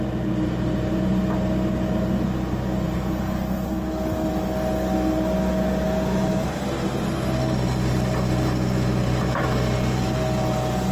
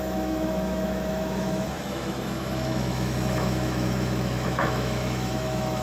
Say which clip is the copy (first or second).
second